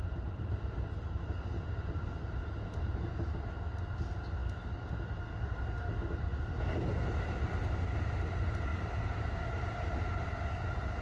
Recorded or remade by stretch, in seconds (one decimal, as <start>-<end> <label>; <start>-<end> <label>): 0.0-11.0 recorded